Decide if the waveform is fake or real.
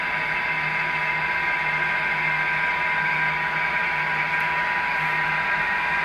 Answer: real